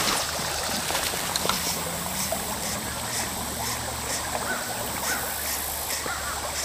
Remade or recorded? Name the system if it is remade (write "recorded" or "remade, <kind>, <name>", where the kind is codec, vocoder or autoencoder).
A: recorded